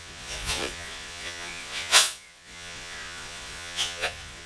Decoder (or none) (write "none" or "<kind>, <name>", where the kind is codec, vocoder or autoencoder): vocoder, Vocos